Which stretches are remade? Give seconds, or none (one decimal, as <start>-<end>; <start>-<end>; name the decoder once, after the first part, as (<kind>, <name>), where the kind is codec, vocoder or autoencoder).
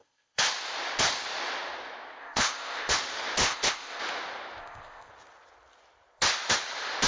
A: 0.0-0.5 (codec, ZipCodec); 2.2-2.9; 3.4-4.0; 4.6-5.1